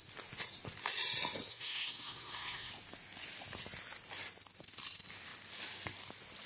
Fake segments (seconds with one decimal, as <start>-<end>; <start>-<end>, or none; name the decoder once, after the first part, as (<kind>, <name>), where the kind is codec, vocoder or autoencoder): 1.5-2.7 (codec, SNAC)